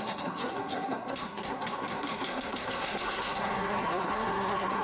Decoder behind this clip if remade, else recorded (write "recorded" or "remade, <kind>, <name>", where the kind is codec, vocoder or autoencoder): remade, codec, SNAC